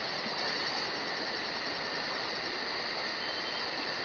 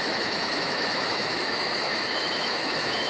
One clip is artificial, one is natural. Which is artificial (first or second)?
second